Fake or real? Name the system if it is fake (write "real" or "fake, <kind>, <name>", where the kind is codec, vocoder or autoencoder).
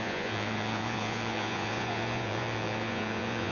fake, vocoder, Vocos